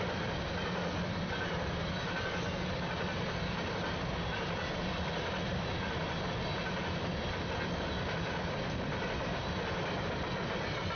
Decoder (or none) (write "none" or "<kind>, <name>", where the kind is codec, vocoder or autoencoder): none